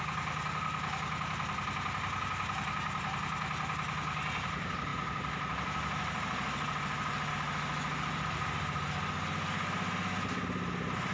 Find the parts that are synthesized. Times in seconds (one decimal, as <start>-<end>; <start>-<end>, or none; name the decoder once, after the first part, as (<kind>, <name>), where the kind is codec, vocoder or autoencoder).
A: none